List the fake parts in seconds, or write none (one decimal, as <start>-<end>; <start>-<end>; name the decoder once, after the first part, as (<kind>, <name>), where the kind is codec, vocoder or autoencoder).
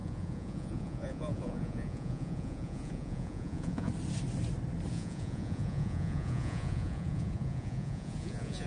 0.0-3.9 (vocoder, Vocos); 4.9-8.7